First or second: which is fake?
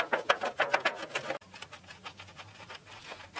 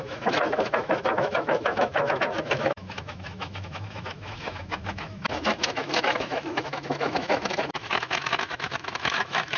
second